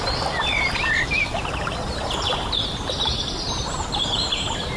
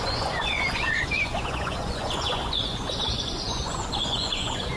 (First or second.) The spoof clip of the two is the second